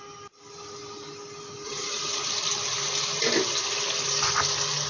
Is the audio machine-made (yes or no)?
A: no